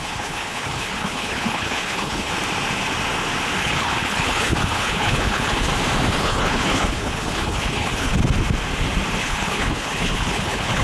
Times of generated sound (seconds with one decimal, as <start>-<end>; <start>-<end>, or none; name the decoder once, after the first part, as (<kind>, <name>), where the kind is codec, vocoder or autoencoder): 0.0-2.3 (codec, HILCodec); 3.6-5.7; 6.2-8.1; 9.2-10.8